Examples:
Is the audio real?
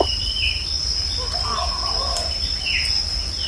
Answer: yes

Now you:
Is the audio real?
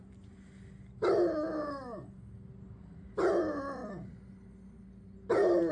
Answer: yes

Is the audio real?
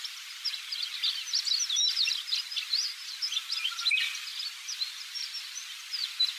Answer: yes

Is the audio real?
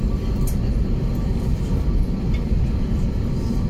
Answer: yes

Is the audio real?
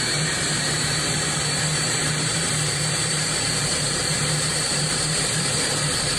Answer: no